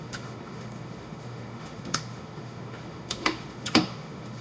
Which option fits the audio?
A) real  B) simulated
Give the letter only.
B